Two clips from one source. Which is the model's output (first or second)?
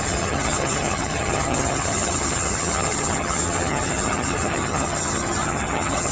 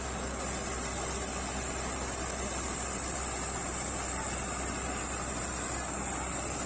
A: first